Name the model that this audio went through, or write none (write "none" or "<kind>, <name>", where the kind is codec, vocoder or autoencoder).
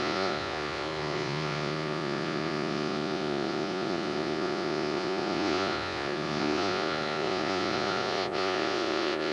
vocoder, Vocos